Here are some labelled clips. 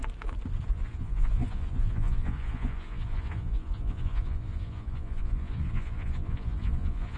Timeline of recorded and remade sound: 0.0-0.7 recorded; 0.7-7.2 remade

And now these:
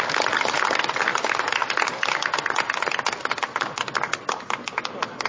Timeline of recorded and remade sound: 0.0-5.3 recorded

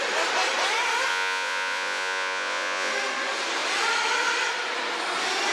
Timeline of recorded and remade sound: 0.0-1.1 recorded; 1.1-2.9 remade; 2.9-5.5 recorded

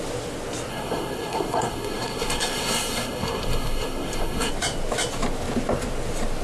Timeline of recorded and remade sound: 0.0-0.7 recorded; 0.7-4.5 remade; 4.5-6.4 recorded